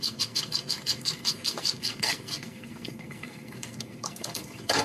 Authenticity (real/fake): fake